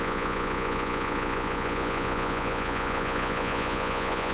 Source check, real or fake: fake